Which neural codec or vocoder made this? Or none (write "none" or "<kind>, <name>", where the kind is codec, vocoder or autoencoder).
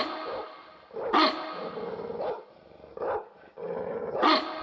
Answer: none